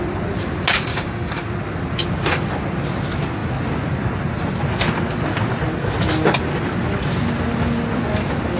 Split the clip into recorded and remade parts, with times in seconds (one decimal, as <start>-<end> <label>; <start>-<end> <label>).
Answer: 0.0-0.9 recorded; 0.9-1.4 remade; 1.4-8.6 recorded